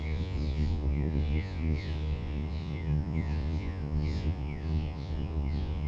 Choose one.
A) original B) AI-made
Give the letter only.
B